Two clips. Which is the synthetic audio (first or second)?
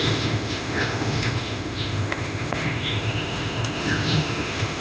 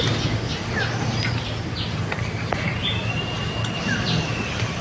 first